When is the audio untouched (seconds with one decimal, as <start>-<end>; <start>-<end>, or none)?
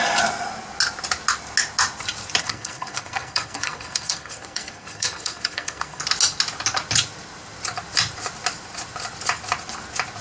0.0-2.4; 6.0-10.2